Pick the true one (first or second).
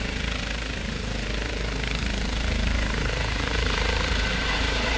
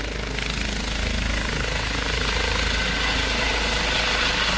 second